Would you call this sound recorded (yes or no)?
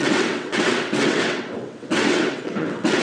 no